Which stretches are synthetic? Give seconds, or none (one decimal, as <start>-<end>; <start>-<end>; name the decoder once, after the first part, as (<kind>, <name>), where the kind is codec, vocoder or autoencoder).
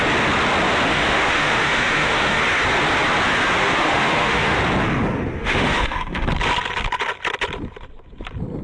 0.9-2.4 (autoencoder, DAC-VAE); 3.6-4.6; 5.4-6.3